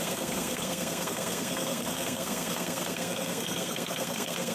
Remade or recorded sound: remade